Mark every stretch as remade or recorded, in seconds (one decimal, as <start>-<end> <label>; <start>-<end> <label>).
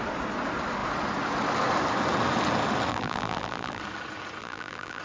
0.0-2.9 recorded; 2.9-3.8 remade; 3.8-4.4 recorded; 4.4-5.0 remade